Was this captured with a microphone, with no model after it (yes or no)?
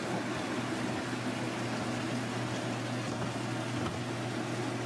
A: yes